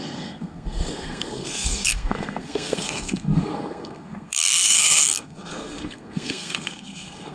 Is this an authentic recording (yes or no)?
no